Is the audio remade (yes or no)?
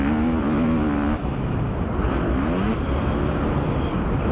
no